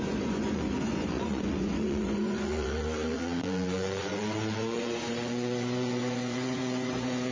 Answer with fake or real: fake